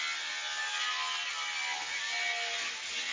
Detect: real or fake real